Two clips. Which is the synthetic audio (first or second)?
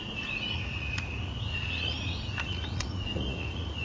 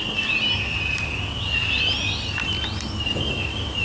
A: first